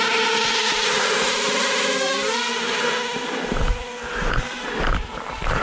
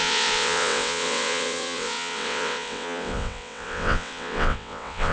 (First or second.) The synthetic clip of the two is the second